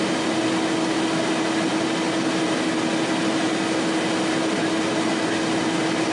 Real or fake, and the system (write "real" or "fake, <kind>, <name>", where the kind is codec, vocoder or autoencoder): real